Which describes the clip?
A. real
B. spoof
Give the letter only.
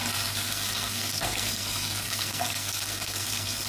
B